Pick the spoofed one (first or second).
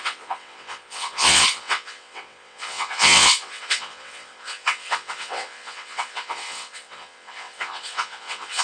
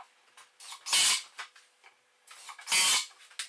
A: first